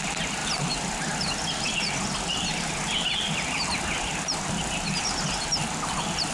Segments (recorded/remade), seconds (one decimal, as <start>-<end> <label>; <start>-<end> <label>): 0.0-6.3 recorded